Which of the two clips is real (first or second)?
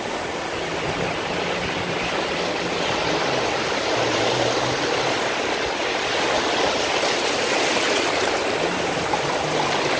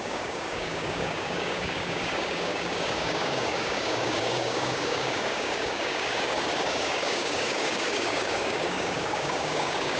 first